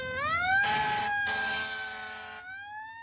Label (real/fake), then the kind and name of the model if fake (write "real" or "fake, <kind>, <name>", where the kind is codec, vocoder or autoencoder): real